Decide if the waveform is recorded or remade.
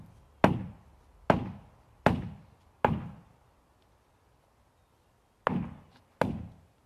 recorded